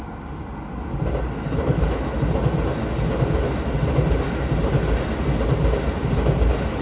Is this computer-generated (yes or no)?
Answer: no